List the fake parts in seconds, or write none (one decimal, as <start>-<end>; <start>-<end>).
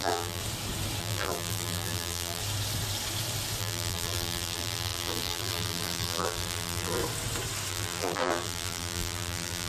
0.0-0.4; 1.0-2.4; 3.6-7.0; 7.7-9.7